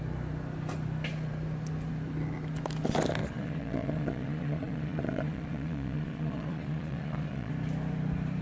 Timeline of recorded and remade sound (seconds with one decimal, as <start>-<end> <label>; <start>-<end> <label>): 0.0-3.2 recorded; 3.2-7.5 remade; 7.5-8.4 recorded